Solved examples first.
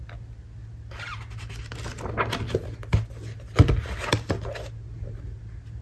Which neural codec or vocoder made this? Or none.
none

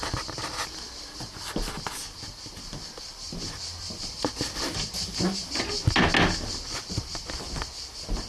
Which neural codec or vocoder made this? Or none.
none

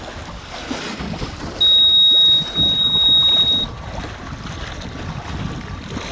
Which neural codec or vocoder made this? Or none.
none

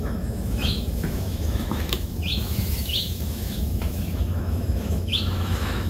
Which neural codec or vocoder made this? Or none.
autoencoder, DAC-VAE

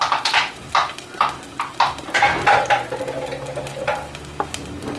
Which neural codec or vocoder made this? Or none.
none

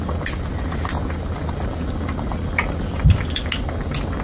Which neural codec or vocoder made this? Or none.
none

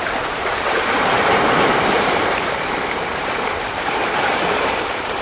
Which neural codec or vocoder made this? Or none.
vocoder, BigVGAN v2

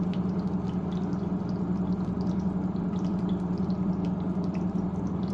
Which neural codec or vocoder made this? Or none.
none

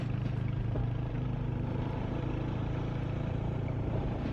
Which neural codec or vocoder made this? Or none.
vocoder, BigVGAN v2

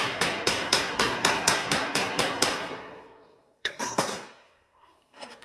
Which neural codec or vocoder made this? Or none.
codec, SNAC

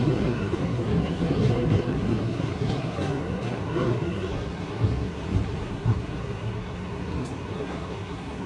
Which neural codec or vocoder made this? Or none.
codec, SNAC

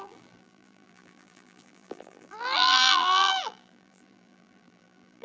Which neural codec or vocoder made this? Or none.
vocoder, BigVGAN v2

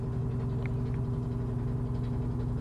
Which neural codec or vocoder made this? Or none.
none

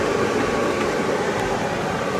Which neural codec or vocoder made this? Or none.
none